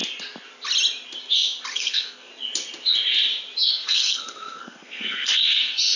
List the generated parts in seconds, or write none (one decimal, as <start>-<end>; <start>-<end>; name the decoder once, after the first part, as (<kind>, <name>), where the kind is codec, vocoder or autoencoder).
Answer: 1.7-2.3 (codec, SNAC); 3.7-6.0